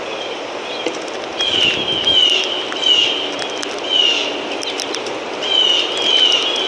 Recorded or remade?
recorded